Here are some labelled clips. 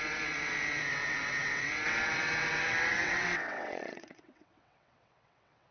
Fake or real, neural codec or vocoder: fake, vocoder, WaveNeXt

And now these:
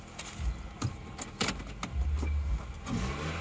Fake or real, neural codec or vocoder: real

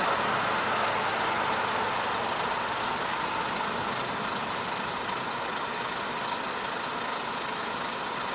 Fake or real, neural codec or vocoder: real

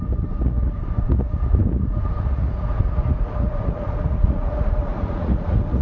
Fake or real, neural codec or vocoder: fake, vocoder, Vocos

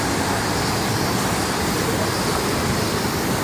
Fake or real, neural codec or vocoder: fake, vocoder, BigVGAN v2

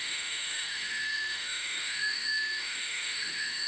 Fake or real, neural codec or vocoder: fake, autoencoder, DAC-VAE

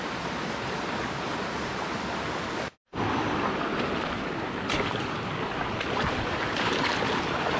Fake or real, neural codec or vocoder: real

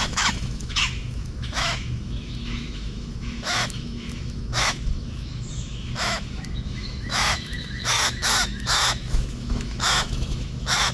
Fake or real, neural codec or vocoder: fake, autoencoder, DAC-VAE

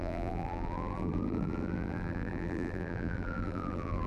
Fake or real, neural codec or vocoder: fake, vocoder, BigVGAN v2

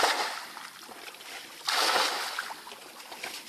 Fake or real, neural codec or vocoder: real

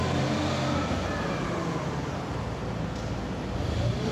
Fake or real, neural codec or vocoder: real